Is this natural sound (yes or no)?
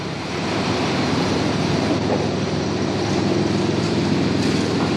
no